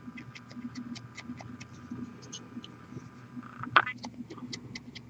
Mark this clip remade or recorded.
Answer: recorded